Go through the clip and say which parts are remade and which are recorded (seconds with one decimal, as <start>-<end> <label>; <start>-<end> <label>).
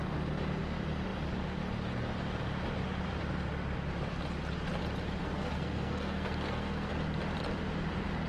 0.0-5.2 recorded; 5.2-6.9 remade; 6.9-8.3 recorded